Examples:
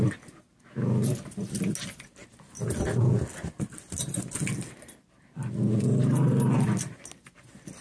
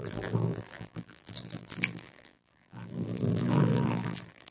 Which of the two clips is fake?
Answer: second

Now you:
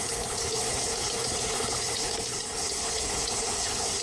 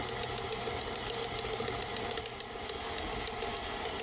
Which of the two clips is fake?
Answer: first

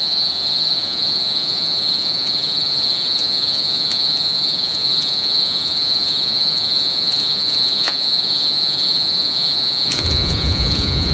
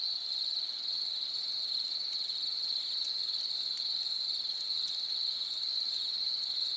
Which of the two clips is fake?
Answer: first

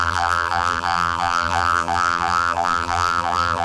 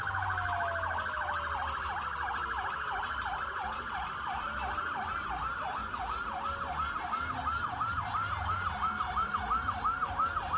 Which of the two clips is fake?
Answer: first